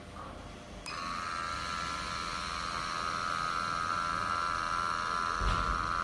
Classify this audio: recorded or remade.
recorded